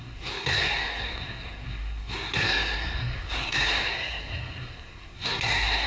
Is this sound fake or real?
fake